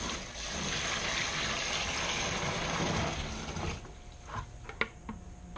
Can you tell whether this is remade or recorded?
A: recorded